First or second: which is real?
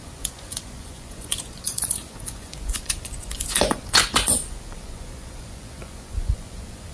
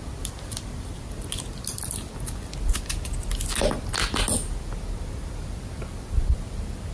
second